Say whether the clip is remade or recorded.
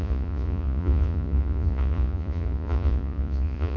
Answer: remade